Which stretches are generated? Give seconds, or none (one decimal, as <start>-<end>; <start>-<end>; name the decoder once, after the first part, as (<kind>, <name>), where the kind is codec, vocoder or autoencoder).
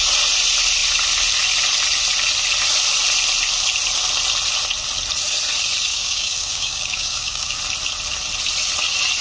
5.9-7.6 (codec, DAC)